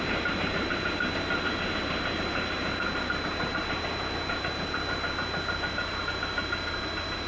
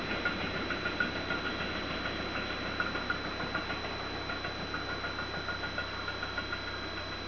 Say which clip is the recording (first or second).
second